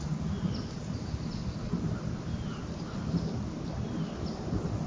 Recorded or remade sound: recorded